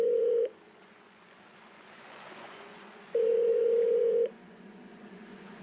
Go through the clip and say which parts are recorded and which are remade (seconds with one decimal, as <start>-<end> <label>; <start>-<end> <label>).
0.0-5.6 remade